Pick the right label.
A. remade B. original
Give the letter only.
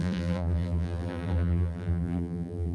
A